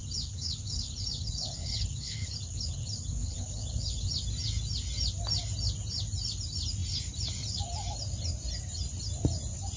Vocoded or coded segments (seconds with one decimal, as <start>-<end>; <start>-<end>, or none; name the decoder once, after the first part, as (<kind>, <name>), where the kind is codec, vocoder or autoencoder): 0.0-4.1 (codec, HILCodec)